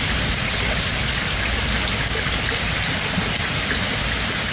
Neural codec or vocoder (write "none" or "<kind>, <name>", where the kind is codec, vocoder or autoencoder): none